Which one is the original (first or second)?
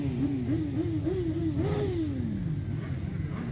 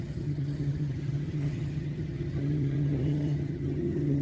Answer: first